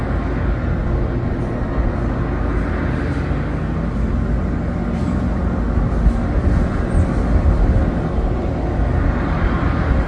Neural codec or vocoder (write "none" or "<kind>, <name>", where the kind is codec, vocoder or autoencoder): none